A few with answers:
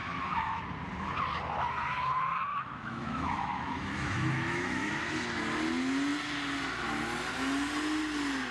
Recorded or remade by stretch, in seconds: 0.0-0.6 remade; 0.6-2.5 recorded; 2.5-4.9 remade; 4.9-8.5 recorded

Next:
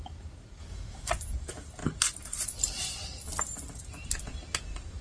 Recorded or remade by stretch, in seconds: 0.0-0.6 recorded; 0.6-1.1 remade; 1.1-5.0 recorded

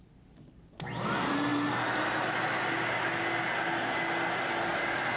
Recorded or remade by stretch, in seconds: 0.0-5.2 recorded